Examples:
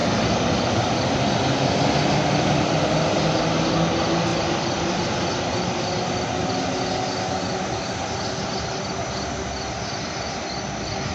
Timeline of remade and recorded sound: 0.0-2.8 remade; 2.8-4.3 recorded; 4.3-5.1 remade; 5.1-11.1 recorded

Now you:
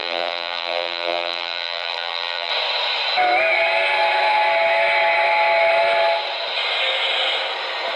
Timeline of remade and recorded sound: 0.0-2.5 remade; 2.5-8.0 recorded

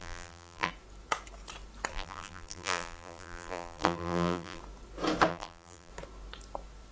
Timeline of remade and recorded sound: 0.0-0.7 remade; 0.7-1.9 recorded; 1.9-4.6 remade; 4.6-5.3 recorded; 5.3-5.9 remade; 5.9-6.9 recorded

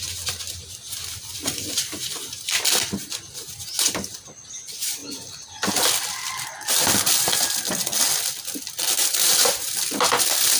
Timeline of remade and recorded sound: 0.0-9.0 recorded; 9.0-9.7 remade; 9.7-10.6 recorded

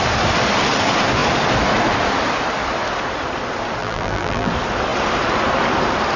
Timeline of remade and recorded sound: 0.0-3.8 recorded; 3.8-4.5 remade; 4.5-6.2 recorded

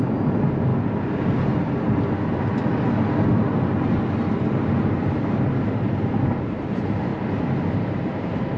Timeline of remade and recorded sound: 0.0-0.7 remade; 0.7-4.8 recorded; 4.8-7.1 remade; 7.1-7.7 recorded; 7.7-8.6 remade